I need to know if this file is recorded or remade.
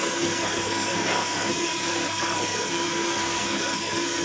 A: remade